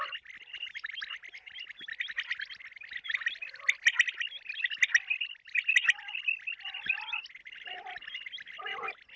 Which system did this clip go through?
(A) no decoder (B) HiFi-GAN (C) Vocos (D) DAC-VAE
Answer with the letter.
A